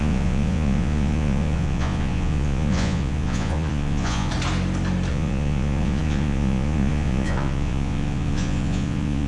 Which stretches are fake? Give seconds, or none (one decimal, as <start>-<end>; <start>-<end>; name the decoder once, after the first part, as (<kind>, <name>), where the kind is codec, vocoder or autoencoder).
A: 0.0-4.3 (vocoder, Vocos); 5.1-9.3